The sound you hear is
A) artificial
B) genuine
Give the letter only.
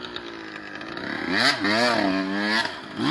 B